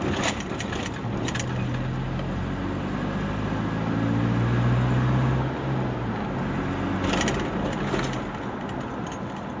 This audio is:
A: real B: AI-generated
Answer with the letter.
A